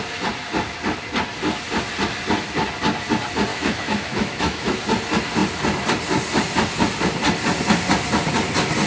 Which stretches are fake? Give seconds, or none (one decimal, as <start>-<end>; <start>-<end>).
3.5-4.8